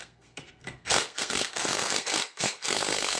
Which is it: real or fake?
fake